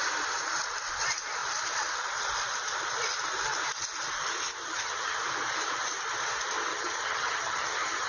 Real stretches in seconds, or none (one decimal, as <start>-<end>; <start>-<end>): 0.0-4.6; 5.2-6.7